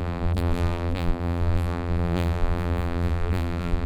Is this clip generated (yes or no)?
yes